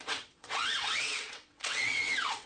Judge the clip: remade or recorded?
remade